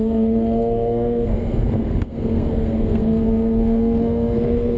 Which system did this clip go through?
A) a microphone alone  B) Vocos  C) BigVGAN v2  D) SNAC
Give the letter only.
D